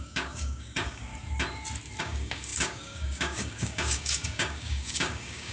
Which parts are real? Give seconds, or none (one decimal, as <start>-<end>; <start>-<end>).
1.1-2.0